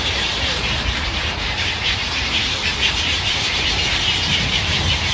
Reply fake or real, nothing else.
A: fake